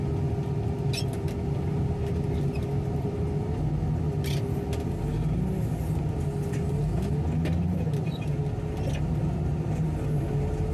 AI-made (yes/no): no